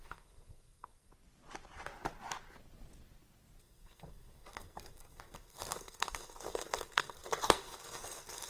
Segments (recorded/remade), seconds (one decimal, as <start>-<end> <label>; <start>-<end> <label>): 0.0-1.1 remade; 1.1-3.6 recorded; 3.6-8.5 remade